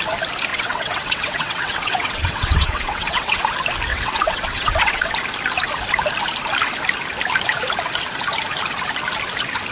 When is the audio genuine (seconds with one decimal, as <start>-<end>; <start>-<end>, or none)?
0.0-0.5; 3.4-3.9; 5.1-9.7